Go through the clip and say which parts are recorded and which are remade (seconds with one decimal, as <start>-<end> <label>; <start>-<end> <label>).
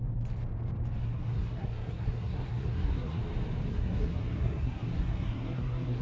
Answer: 0.0-1.0 recorded; 1.0-3.2 remade; 3.2-3.7 recorded; 3.7-6.0 remade